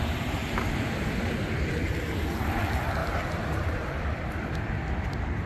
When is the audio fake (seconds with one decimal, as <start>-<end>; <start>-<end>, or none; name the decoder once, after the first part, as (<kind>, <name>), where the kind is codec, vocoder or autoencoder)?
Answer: 3.0-3.6 (vocoder, BigVGAN v2)